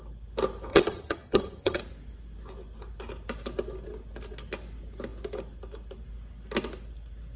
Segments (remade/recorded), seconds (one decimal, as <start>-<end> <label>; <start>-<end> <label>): 0.0-0.7 recorded; 0.7-1.8 remade; 1.8-7.4 recorded